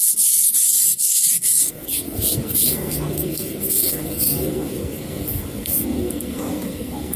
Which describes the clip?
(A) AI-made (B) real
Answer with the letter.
A